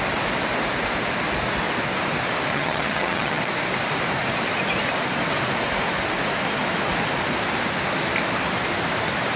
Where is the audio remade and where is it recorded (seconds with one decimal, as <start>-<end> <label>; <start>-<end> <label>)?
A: 0.0-2.5 recorded; 2.5-3.4 remade; 3.4-9.4 recorded